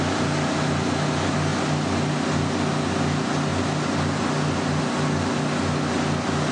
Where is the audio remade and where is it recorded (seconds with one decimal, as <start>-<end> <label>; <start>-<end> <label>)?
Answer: 0.0-6.5 recorded